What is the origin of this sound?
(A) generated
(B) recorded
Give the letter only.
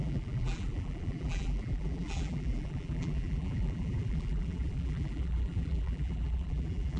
A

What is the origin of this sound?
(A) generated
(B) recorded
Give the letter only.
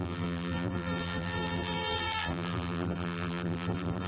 A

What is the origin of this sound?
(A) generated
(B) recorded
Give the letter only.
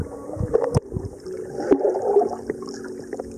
B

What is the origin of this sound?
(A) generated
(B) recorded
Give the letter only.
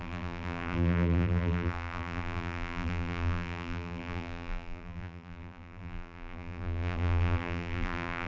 A